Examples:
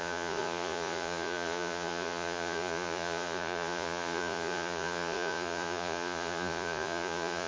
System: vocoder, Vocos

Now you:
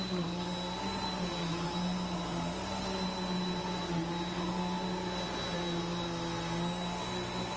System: none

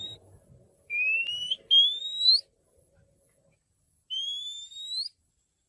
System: none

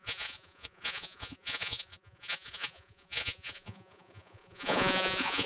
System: vocoder, Vocos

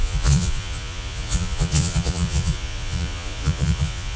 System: vocoder, Vocos